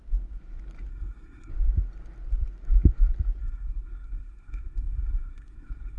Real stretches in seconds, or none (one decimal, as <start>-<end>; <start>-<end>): 0.0-0.9; 1.5-3.4